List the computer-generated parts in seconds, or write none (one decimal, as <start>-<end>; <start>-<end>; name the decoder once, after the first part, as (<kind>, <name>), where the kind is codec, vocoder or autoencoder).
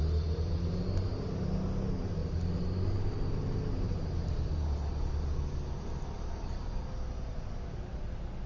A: none